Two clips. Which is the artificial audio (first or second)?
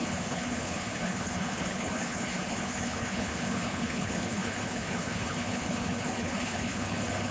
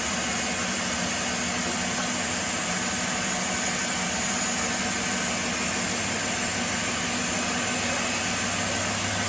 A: first